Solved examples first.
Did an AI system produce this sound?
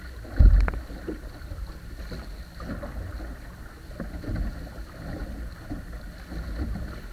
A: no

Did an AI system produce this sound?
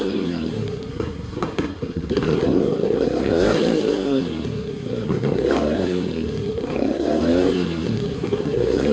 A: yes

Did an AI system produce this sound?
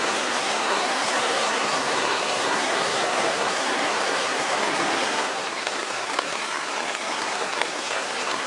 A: yes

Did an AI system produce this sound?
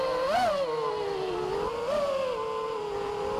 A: no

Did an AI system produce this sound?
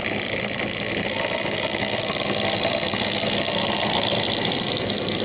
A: no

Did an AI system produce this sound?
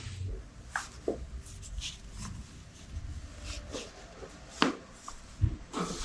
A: no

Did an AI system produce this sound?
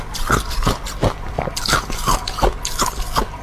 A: no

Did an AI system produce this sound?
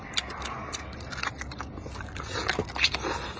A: no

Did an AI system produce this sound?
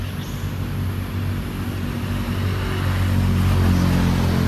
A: no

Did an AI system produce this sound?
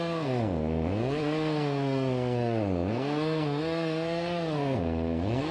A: yes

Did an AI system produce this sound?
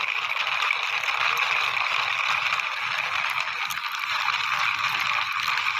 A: no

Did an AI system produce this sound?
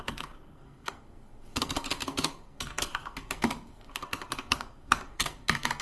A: yes